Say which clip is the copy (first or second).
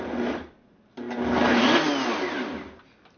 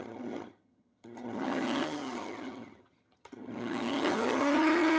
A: second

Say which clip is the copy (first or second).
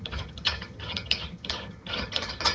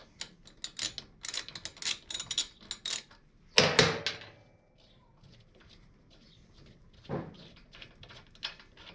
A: first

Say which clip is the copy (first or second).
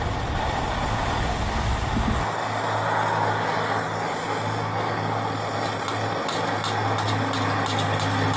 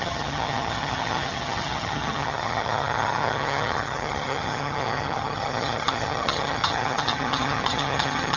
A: second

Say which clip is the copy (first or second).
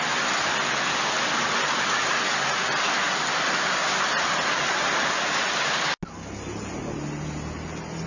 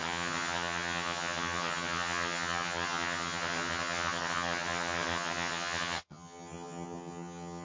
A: second